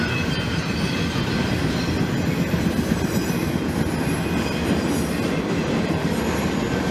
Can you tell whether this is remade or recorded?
recorded